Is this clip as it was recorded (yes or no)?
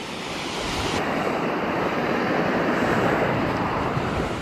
no